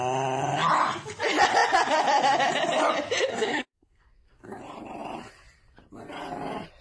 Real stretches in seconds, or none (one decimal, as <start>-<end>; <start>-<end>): 0.0-3.3; 4.6-6.8